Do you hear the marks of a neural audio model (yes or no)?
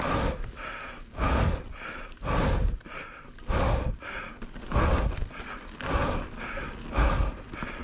no